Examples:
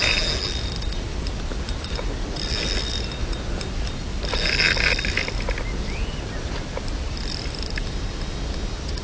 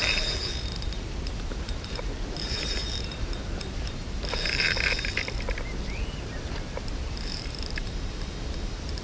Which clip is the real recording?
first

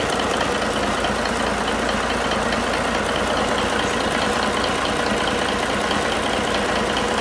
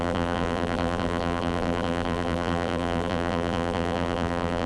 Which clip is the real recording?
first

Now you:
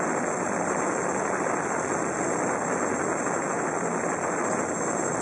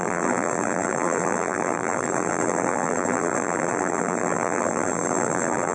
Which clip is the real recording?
first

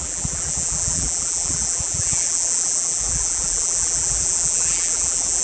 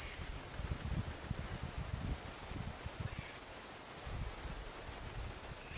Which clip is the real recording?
second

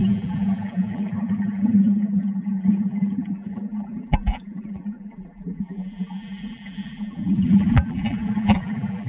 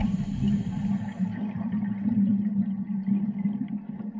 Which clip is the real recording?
second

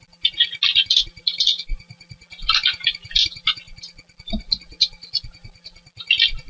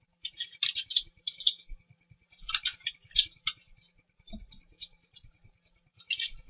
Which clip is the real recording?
first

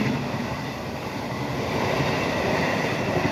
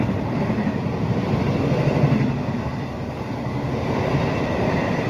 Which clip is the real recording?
second